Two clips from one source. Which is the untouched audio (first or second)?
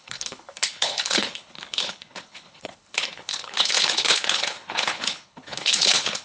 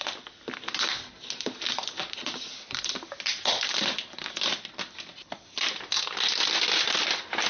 second